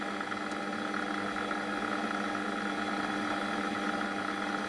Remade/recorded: recorded